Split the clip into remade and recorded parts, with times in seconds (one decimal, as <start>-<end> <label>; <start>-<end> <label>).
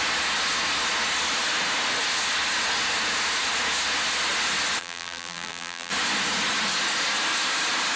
0.0-4.8 recorded; 4.8-5.9 remade; 5.9-8.0 recorded